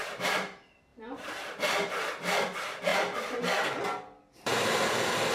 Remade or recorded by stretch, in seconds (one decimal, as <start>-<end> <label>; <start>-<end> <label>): 0.0-2.9 remade; 2.9-4.2 recorded; 4.2-5.3 remade